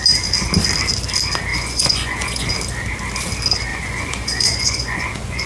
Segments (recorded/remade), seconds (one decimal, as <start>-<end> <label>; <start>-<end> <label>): 0.0-1.5 recorded; 1.5-2.5 remade; 2.5-3.7 recorded; 3.7-5.5 remade

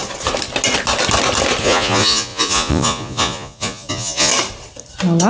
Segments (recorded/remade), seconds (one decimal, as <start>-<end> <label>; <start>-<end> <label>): 0.0-1.6 recorded; 1.6-4.3 remade; 4.3-5.3 recorded

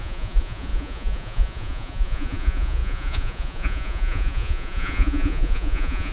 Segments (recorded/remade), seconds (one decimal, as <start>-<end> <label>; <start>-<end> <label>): 0.0-6.1 remade

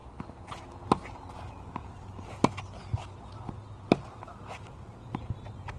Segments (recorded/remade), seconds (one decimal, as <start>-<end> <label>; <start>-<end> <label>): 0.0-5.8 recorded

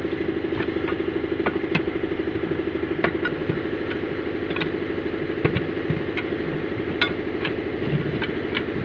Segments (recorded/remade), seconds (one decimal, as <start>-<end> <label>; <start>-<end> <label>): 0.0-8.8 recorded

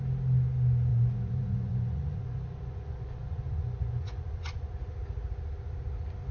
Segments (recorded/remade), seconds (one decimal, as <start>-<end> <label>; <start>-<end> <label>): 0.0-0.9 recorded; 0.9-4.7 remade; 4.7-6.3 recorded

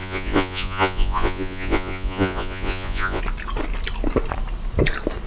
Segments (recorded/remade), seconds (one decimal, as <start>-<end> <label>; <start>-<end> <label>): 0.0-3.2 remade; 3.2-5.3 recorded

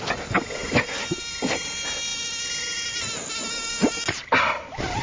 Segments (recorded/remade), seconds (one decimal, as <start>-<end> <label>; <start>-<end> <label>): 0.0-5.0 recorded